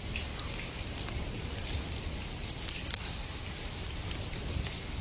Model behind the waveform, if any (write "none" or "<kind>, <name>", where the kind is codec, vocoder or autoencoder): vocoder, BigVGAN v2